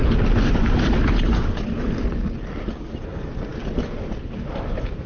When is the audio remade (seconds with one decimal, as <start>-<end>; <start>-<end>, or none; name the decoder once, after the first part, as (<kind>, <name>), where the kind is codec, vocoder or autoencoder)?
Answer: none